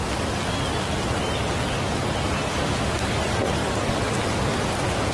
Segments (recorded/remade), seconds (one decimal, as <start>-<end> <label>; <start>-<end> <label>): 0.0-2.5 recorded; 2.5-3.0 remade; 3.0-5.1 recorded